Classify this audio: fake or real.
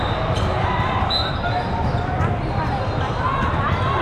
real